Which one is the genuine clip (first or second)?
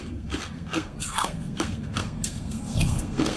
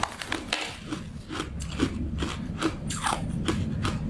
second